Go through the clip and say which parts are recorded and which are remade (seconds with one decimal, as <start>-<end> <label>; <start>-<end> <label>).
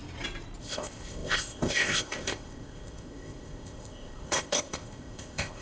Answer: 0.0-0.6 recorded; 0.6-5.6 remade